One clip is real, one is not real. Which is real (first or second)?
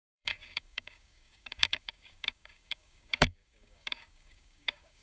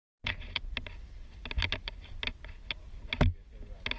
second